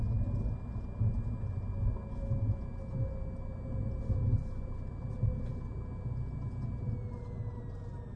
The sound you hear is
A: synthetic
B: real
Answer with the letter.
B